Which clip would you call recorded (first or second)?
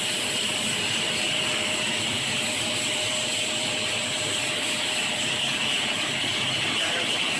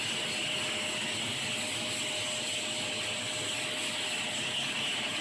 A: second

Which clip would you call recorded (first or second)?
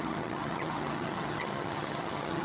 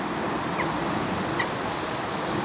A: second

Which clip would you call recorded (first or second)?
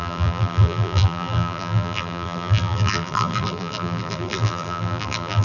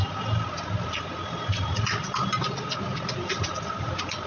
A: second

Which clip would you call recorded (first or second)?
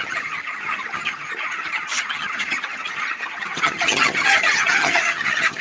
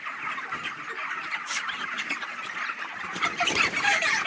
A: second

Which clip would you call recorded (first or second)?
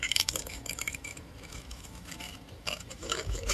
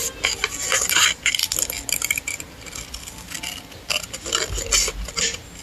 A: second